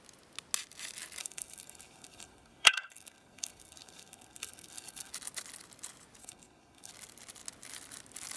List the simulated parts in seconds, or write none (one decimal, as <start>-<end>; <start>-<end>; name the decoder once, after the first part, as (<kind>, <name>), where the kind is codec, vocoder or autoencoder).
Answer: 1.2-5.1 (codec, SNAC); 6.2-6.9